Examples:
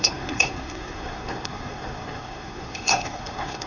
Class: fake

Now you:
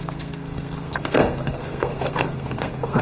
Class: fake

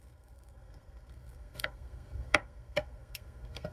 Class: fake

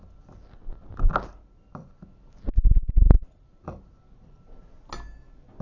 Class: real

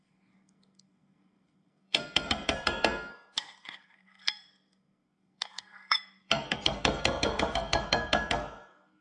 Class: fake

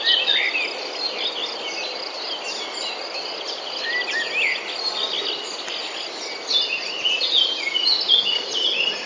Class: real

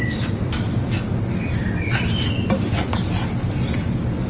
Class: real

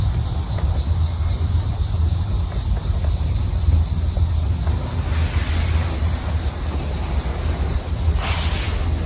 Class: real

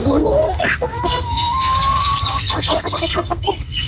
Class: fake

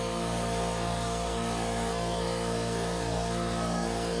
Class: fake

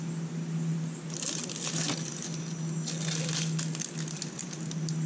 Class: real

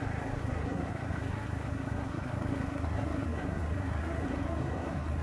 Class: fake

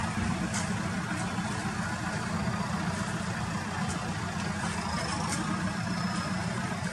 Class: real